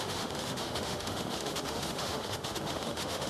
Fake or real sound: fake